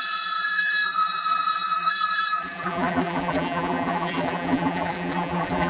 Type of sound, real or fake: fake